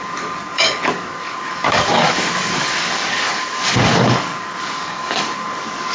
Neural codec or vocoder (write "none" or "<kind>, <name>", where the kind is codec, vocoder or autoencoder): codec, DAC